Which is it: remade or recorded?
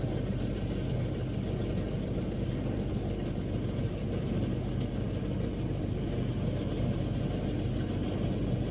recorded